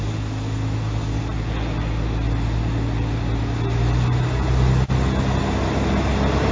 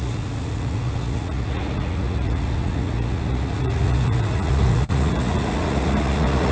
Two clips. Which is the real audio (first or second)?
first